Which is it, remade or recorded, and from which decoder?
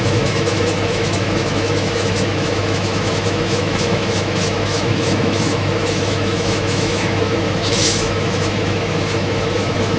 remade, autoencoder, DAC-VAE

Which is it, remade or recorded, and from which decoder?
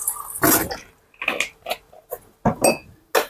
recorded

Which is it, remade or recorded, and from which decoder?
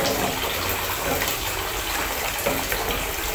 recorded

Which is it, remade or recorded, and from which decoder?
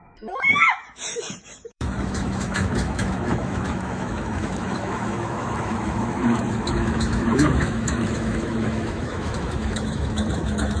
remade, autoencoder, DAC-VAE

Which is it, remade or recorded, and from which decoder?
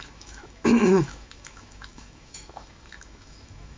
remade, autoencoder, DAC-VAE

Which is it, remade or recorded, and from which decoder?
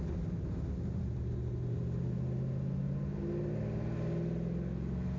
recorded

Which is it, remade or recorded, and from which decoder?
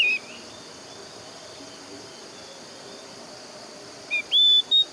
recorded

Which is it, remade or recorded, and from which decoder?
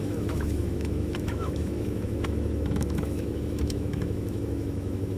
remade, autoencoder, DAC-VAE